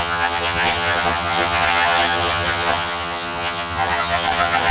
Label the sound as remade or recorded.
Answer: remade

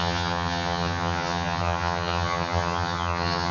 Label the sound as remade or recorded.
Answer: remade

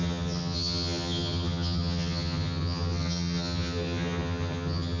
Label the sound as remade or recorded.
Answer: remade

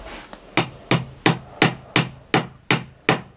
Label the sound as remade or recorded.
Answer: recorded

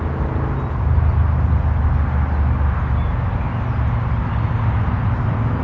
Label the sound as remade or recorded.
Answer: recorded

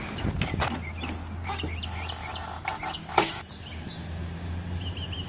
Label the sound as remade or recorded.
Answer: recorded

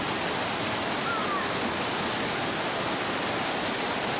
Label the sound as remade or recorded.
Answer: recorded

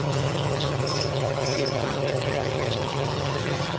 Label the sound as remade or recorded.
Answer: remade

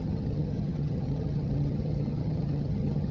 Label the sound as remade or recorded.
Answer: remade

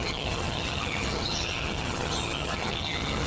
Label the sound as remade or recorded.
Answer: remade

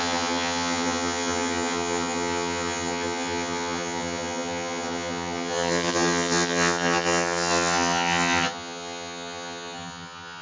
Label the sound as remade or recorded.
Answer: remade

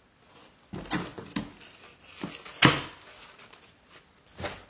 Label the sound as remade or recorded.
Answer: recorded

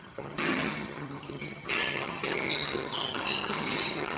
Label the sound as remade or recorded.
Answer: remade